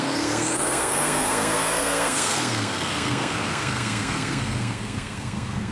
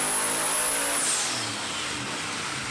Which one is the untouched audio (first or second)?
second